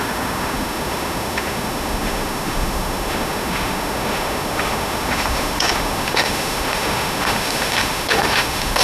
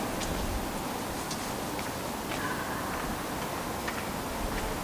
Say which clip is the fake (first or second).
first